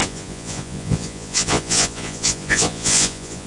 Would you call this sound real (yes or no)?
no